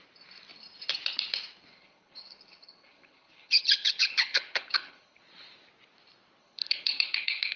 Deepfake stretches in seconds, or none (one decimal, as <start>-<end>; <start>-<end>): 1.7-5.2; 6.4-7.6